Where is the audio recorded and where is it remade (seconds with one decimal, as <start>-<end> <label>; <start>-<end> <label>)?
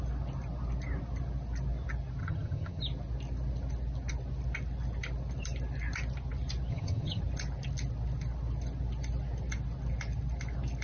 0.0-2.2 recorded; 2.2-2.8 remade; 2.8-6.7 recorded; 6.7-7.2 remade; 7.2-10.8 recorded